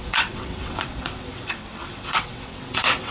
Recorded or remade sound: remade